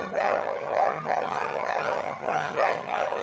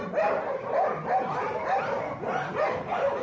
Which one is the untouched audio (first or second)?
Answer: second